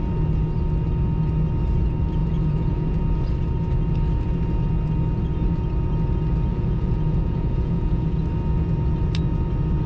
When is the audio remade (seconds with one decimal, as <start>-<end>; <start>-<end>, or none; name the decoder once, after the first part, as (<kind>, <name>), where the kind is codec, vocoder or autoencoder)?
2.2-3.0 (vocoder, Vocos); 6.5-8.2